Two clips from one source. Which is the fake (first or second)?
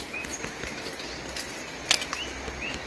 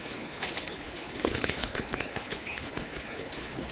second